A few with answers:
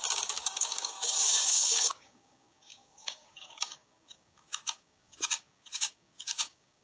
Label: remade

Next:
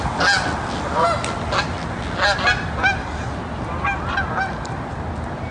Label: recorded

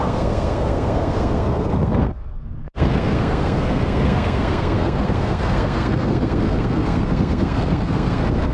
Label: remade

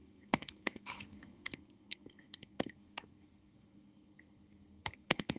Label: remade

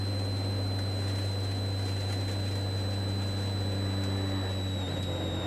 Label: recorded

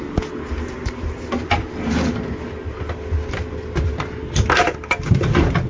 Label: recorded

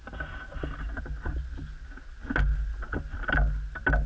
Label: recorded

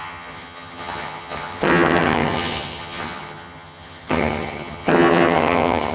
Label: remade